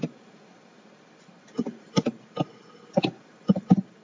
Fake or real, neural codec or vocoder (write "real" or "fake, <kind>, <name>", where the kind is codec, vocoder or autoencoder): real